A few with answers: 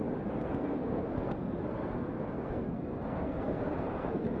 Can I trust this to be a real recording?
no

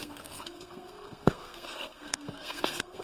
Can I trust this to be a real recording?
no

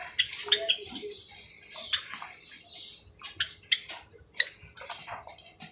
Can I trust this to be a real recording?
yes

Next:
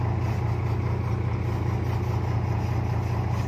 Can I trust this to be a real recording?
yes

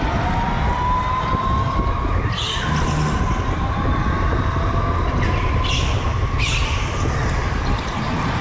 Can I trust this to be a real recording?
yes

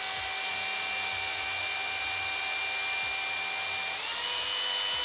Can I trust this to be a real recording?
yes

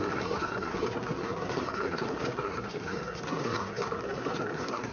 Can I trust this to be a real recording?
no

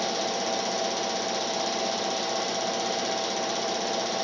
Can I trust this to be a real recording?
yes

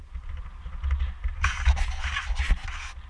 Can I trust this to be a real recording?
yes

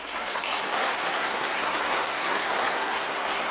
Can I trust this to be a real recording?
no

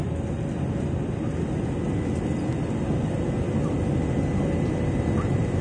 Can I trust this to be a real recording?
yes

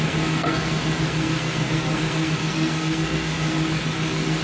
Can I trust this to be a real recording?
no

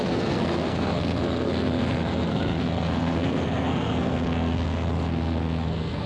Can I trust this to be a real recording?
no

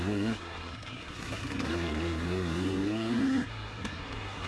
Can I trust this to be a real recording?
no